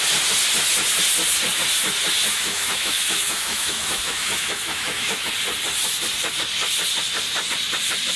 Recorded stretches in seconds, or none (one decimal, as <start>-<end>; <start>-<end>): 0.0-2.3; 5.3-8.2